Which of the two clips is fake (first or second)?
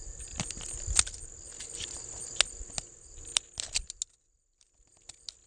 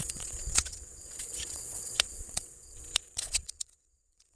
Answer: second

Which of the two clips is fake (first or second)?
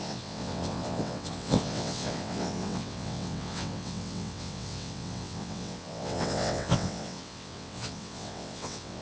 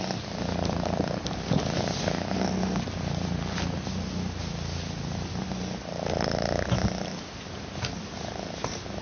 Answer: first